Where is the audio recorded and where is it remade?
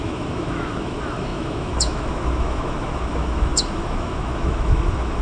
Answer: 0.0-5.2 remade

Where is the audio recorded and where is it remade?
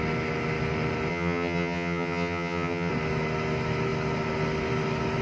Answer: 0.0-1.1 recorded; 1.1-2.9 remade; 2.9-5.2 recorded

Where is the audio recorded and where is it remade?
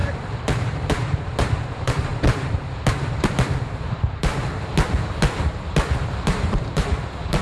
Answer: 0.0-2.1 remade; 2.1-3.9 recorded; 3.9-4.3 remade; 4.3-6.1 recorded; 6.1-7.4 remade